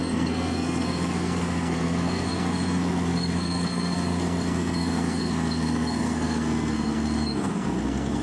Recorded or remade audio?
remade